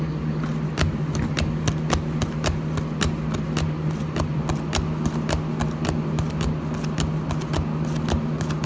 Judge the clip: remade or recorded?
recorded